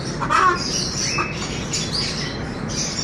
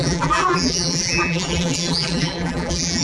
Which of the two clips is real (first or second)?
first